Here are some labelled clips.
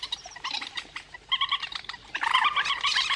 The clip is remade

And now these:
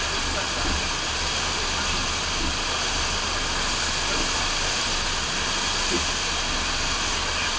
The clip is recorded